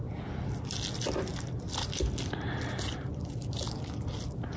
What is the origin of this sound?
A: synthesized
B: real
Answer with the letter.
B